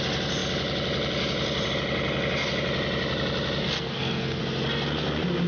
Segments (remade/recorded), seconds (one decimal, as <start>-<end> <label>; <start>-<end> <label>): 0.0-3.6 recorded; 3.6-4.4 remade; 4.4-5.5 recorded